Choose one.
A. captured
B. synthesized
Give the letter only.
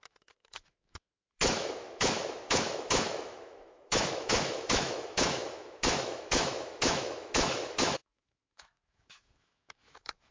B